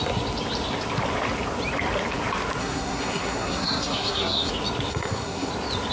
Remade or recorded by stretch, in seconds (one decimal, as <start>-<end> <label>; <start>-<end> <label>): 0.0-2.6 recorded; 2.6-4.5 remade; 4.5-4.9 recorded; 4.9-5.5 remade; 5.5-5.9 recorded